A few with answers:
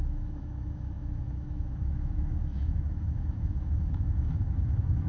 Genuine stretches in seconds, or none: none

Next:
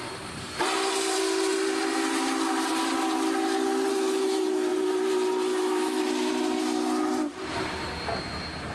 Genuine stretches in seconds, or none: 0.0-3.9; 4.7-5.5; 6.0-8.7

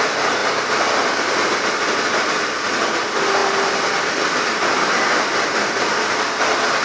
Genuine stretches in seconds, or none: 0.0-6.8

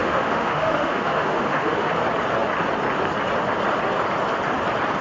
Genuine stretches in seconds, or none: 1.9-5.0

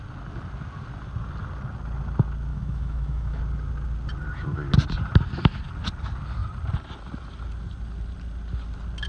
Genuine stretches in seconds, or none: 0.0-2.5; 3.4-9.1